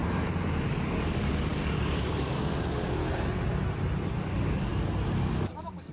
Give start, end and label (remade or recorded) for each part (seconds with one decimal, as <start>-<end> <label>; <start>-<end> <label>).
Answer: 0.0-0.7 recorded; 0.7-3.0 remade; 3.0-4.1 recorded; 4.1-4.7 remade; 4.7-5.2 recorded; 5.2-5.9 remade